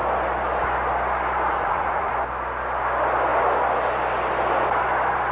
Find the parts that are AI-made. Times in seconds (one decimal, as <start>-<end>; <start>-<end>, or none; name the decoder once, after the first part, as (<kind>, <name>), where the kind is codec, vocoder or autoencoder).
1.5-2.1 (vocoder, Vocos)